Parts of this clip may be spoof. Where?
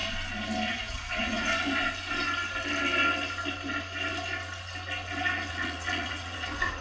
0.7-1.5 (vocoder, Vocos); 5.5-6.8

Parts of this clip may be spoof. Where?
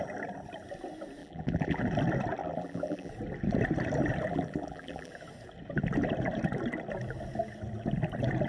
1.2-1.8 (vocoder, BigVGAN v2); 2.4-3.1; 4.3-5.1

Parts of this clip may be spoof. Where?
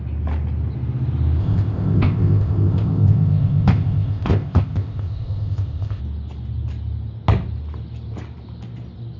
1.4-6.0 (codec, ZipCodec)